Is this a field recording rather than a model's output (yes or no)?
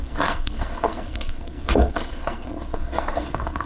no